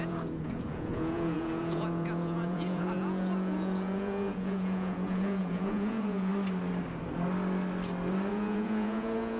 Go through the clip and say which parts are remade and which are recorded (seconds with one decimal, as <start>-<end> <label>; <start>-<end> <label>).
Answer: 0.0-6.3 remade; 6.3-8.3 recorded; 8.3-9.4 remade